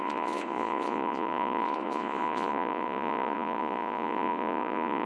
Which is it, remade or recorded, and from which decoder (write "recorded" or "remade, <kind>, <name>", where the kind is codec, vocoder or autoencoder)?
remade, vocoder, Vocos